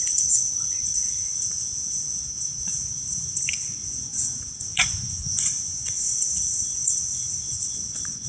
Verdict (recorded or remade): remade